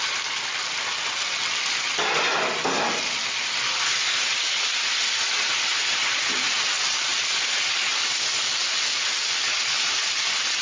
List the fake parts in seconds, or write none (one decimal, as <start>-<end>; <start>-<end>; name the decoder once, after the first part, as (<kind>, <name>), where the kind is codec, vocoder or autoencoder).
none